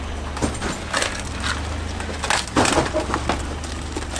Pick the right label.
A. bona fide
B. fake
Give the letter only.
A